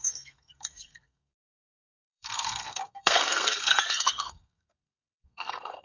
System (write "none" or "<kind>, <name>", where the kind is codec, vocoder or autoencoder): codec, SNAC